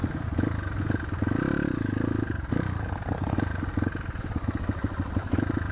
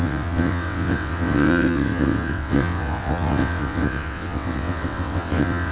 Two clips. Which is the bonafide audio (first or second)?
first